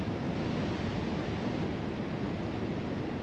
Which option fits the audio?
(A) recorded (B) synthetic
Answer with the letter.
A